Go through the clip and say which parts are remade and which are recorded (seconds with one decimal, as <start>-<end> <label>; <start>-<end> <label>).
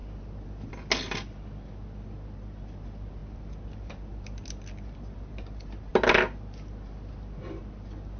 0.0-8.2 recorded